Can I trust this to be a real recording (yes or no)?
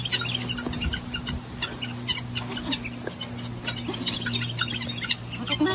yes